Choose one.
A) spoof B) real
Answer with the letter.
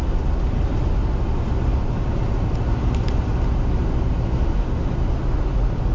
B